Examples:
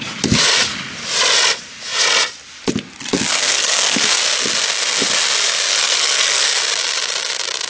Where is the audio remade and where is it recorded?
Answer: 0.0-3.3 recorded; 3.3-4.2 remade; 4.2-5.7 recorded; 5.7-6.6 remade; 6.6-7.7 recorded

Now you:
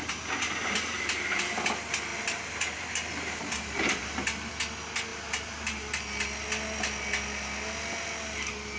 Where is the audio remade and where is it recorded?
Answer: 0.0-1.4 remade; 1.4-2.1 recorded; 2.1-4.5 remade; 4.5-5.1 recorded; 5.1-6.0 remade; 6.0-8.8 recorded

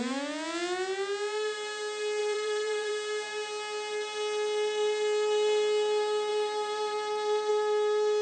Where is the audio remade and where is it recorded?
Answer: 0.0-2.2 recorded; 2.2-2.9 remade; 2.9-8.2 recorded

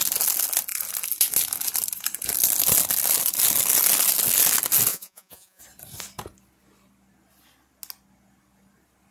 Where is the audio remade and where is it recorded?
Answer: 0.0-4.9 recorded; 4.9-5.6 remade; 5.6-9.1 recorded

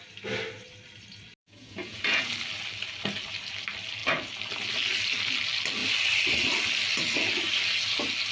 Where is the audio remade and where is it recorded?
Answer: 0.0-1.4 recorded; 1.4-2.3 remade; 2.3-8.3 recorded

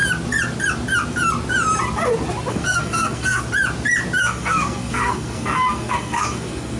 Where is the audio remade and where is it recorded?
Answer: 0.0-2.5 recorded; 2.5-3.4 remade; 3.4-4.2 recorded; 4.2-6.8 remade

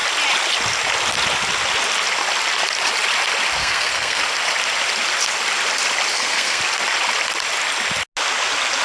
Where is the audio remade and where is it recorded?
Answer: 0.0-3.6 recorded; 3.6-4.2 remade; 4.2-6.1 recorded; 6.1-6.6 remade; 6.6-8.8 recorded

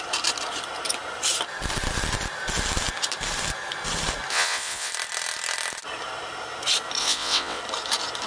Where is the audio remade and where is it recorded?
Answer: 0.0-4.3 recorded; 4.3-4.9 remade; 4.9-7.0 recorded; 7.0-7.6 remade; 7.6-8.3 recorded